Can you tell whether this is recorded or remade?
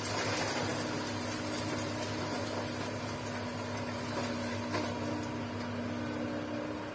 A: recorded